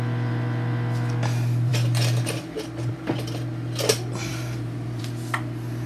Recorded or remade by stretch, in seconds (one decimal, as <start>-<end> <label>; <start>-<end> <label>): 0.0-4.3 recorded; 4.3-5.0 remade; 5.0-5.9 recorded